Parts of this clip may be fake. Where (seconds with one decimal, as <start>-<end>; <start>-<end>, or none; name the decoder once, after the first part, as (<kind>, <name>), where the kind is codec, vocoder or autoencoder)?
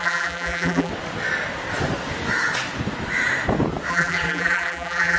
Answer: 0.0-0.9 (vocoder, BigVGAN v2); 3.9-5.2